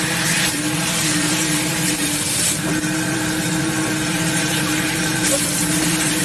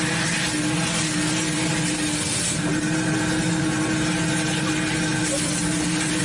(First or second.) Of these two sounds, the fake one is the first